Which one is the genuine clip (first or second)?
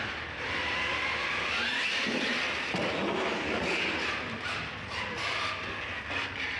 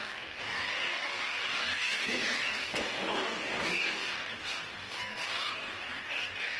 first